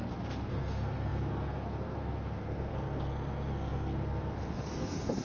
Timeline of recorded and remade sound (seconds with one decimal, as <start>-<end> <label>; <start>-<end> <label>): 0.0-5.2 remade